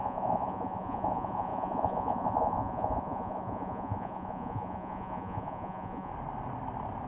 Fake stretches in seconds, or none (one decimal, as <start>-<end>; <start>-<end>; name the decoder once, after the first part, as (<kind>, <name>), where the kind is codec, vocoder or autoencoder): 0.0-6.1 (vocoder, Vocos)